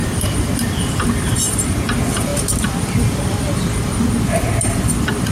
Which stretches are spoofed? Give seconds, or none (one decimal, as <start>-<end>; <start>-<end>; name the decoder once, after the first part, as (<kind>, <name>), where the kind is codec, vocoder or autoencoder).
0.0-1.8 (vocoder, BigVGAN v2)